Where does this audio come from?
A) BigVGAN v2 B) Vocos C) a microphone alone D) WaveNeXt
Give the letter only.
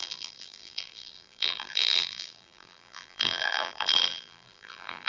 A